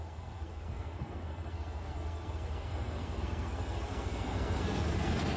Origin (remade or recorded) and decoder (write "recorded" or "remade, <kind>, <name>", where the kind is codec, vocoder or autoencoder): remade, codec, SNAC